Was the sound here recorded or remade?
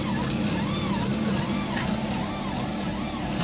recorded